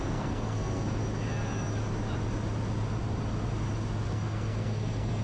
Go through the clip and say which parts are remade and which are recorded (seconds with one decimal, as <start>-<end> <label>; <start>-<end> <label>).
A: 0.0-1.0 remade; 1.0-4.1 recorded; 4.1-5.2 remade